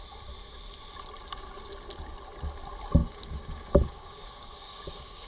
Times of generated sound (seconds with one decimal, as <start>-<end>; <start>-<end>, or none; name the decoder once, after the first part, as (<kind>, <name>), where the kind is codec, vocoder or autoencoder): 3.0-5.3 (codec, DAC)